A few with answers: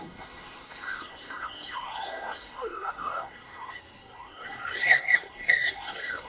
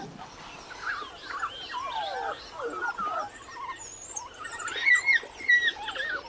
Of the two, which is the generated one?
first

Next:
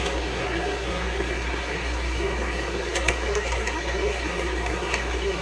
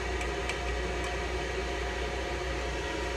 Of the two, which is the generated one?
first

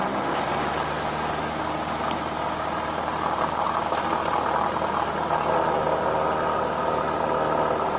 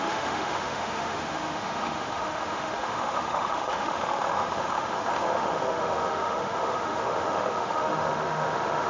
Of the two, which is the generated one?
second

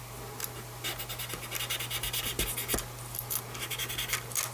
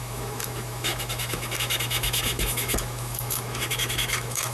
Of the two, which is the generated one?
second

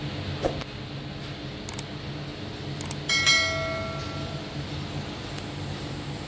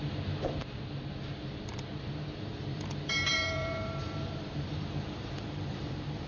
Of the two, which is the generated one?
second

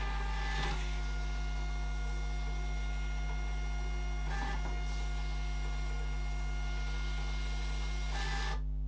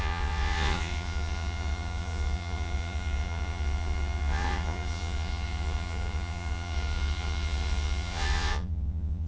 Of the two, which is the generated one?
second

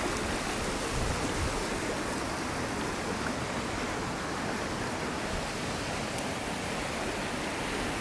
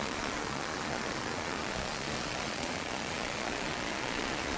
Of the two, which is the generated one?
second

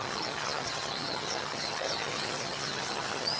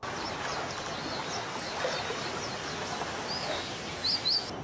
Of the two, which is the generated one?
first